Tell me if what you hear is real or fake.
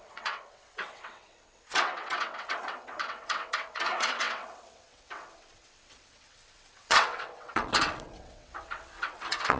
fake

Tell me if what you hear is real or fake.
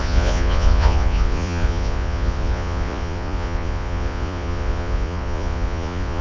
fake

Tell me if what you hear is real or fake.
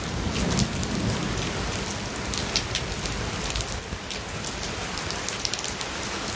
real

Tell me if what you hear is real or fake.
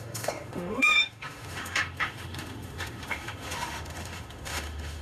fake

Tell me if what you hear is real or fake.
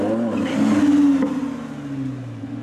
real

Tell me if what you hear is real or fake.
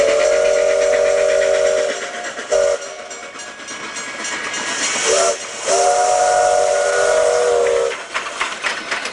real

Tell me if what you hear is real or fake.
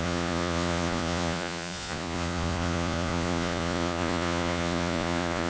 fake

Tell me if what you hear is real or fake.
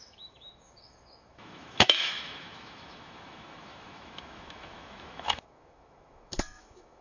fake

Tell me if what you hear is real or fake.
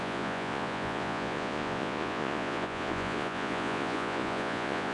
fake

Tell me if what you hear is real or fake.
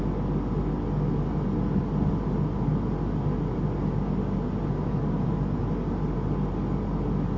real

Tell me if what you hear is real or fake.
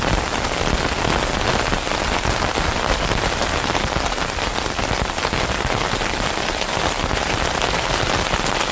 real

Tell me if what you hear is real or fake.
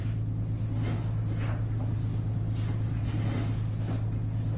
real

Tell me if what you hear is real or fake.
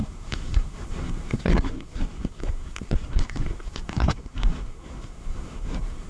fake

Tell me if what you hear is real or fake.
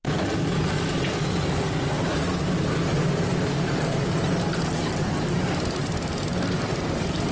real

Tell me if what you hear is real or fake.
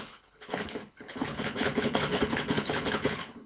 fake